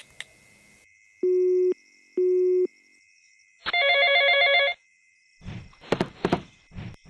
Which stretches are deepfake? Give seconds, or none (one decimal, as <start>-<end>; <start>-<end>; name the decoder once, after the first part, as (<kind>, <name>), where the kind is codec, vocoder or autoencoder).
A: none